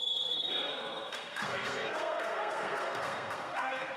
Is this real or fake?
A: fake